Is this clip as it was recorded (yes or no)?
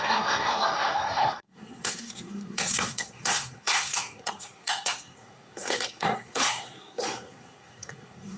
no